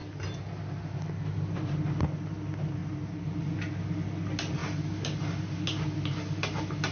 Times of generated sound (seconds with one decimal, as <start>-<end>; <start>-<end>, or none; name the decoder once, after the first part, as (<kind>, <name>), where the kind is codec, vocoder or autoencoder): none